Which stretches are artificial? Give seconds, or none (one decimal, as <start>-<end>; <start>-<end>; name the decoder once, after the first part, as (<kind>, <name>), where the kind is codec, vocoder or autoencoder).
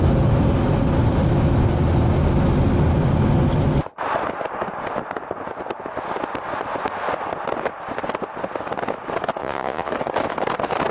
9.4-9.9 (vocoder, Vocos)